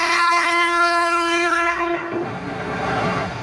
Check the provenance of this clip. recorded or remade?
remade